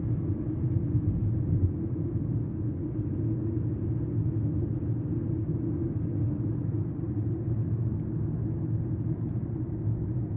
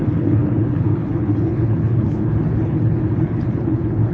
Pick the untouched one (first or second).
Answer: first